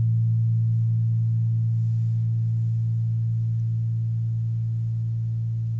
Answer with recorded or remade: recorded